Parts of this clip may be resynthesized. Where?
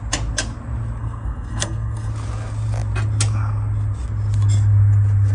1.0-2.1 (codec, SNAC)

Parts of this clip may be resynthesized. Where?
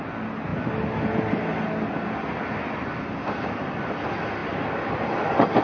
none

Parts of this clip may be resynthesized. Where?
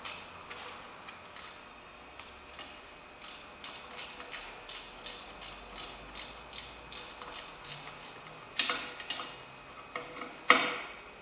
1.6-2.2 (codec, DAC)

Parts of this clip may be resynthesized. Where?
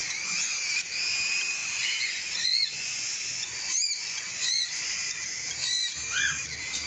0.0-0.6 (vocoder, Vocos); 1.6-4.9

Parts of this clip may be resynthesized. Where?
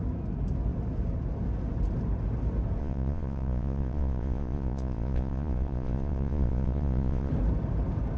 2.8-7.3 (vocoder, Vocos)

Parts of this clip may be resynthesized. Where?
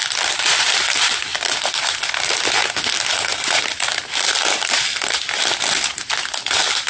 none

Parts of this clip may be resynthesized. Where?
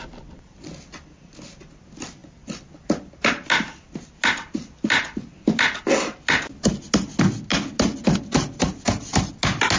none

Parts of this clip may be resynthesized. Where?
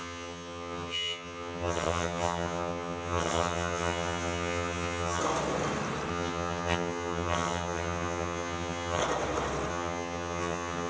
0.0-5.2 (vocoder, HiFi-GAN); 6.1-9.0; 9.7-10.9